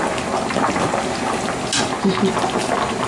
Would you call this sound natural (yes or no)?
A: no